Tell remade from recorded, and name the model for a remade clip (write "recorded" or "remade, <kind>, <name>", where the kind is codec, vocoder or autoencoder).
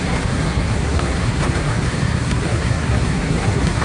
remade, codec, SNAC